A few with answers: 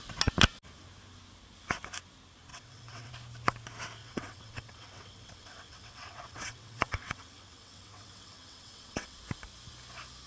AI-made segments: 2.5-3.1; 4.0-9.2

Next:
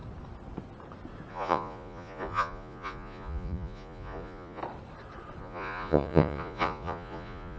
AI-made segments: 1.3-4.6; 5.4-7.6

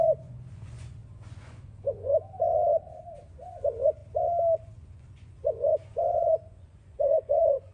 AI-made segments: 0.0-2.1; 3.3-4.0; 4.6-7.7

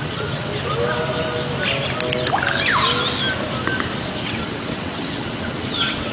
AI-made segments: 0.0-0.5; 4.2-6.1

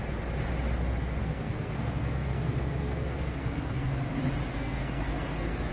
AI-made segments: 1.2-3.9; 4.5-5.7

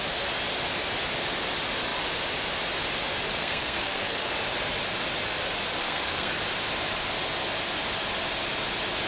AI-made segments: 3.3-4.3; 5.8-6.3